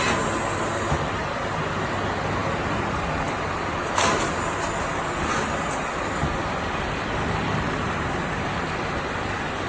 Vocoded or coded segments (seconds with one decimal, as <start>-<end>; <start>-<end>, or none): none